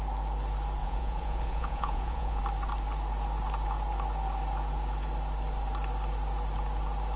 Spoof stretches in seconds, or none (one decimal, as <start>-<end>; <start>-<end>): 0.8-2.4